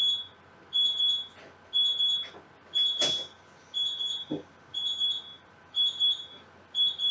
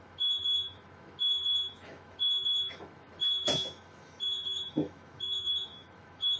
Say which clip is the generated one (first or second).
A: second